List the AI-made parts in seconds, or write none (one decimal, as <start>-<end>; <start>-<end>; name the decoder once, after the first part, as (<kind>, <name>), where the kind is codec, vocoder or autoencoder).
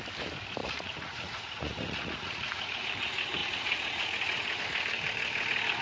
0.6-2.8 (vocoder, Vocos); 3.4-4.6